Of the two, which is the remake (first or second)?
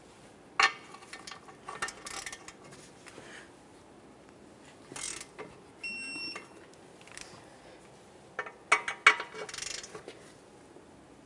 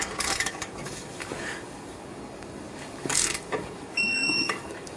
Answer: second